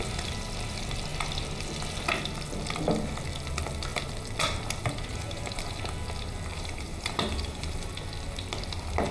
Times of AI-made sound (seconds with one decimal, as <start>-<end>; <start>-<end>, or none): 5.1-5.8; 6.5-7.9

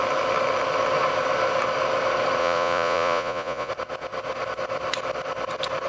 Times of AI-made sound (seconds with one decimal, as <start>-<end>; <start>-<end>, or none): 2.4-3.7

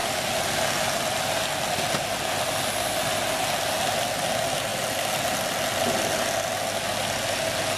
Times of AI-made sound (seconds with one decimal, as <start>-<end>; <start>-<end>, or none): none

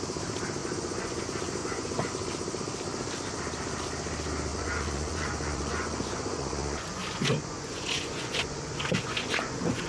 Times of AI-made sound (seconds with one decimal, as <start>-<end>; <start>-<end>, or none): 0.6-1.2; 1.6-2.1; 4.5-9.9

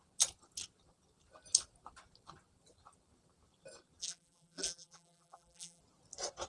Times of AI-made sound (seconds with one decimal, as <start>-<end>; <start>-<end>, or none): 4.0-5.8